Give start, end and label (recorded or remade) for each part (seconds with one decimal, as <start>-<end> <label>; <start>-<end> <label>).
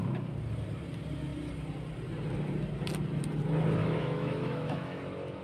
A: 0.0-3.8 recorded; 3.8-5.0 remade; 5.0-5.4 recorded